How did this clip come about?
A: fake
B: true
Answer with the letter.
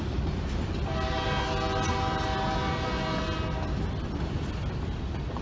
B